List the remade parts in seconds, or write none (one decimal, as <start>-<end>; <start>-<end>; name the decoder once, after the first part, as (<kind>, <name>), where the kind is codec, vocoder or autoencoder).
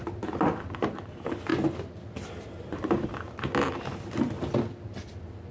none